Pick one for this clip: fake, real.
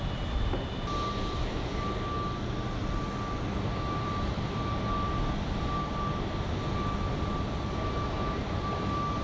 real